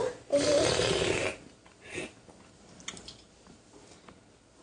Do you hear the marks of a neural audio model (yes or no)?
no